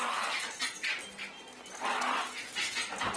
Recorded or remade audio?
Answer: recorded